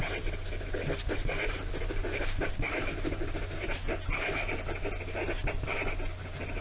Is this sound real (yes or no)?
yes